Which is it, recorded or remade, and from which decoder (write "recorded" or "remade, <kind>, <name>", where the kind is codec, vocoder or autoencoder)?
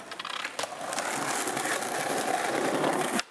recorded